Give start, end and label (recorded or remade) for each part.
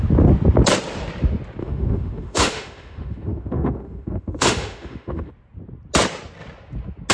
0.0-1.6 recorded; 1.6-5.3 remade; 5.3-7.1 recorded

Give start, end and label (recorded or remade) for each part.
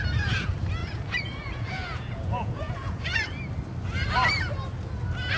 0.0-0.8 recorded; 0.8-3.4 remade; 3.4-5.4 recorded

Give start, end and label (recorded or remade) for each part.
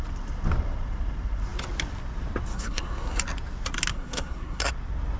0.0-2.5 recorded; 2.5-3.2 remade; 3.2-3.9 recorded; 3.9-4.7 remade; 4.7-5.2 recorded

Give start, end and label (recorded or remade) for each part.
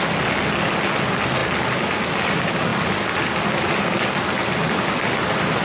0.0-5.6 recorded